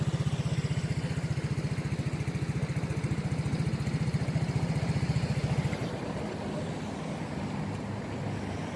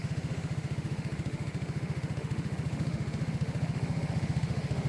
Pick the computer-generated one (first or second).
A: second